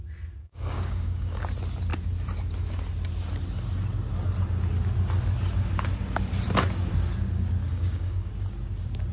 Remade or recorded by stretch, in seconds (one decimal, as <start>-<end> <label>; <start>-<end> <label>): 0.0-0.4 recorded; 0.4-1.4 remade; 1.4-7.7 recorded; 7.7-8.3 remade; 8.3-9.1 recorded